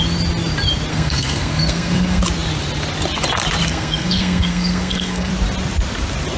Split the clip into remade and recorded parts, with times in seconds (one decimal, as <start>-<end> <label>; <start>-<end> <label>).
0.0-0.9 recorded; 0.9-2.2 remade; 2.2-3.7 recorded; 3.7-5.3 remade; 5.3-6.4 recorded